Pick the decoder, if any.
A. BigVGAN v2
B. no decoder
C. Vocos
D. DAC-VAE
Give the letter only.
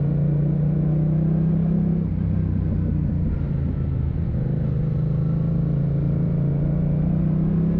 B